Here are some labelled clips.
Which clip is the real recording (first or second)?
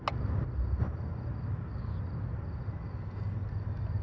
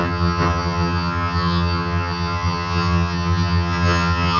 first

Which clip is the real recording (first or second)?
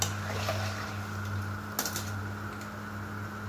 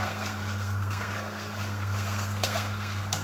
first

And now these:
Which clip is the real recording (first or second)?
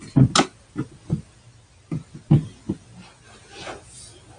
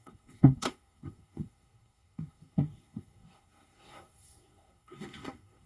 first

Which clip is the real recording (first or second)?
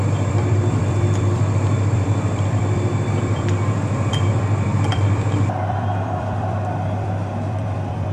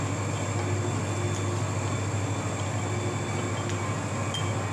second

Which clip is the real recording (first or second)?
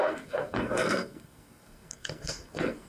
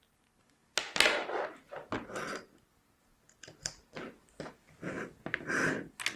second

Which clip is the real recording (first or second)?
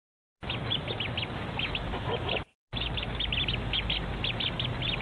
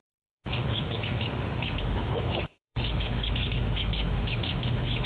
first